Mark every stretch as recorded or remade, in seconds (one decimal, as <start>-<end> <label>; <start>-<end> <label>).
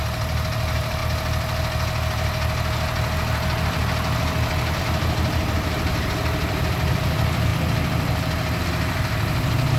0.0-1.0 remade; 1.0-4.8 recorded; 4.8-7.5 remade; 7.5-8.6 recorded; 8.6-9.8 remade